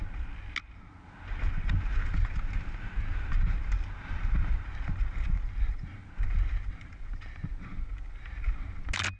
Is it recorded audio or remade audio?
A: recorded